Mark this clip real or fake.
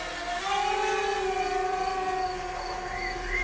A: real